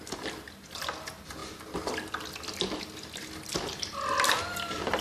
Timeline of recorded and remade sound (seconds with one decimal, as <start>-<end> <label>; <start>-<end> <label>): 0.0-5.0 recorded